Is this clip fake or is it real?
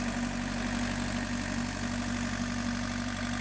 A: real